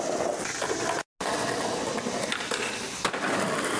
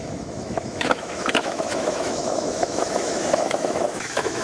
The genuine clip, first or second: first